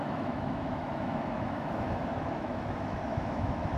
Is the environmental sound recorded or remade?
remade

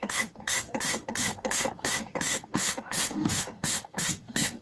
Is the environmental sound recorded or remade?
remade